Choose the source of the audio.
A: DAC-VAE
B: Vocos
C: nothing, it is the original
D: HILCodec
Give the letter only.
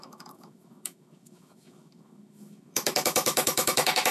A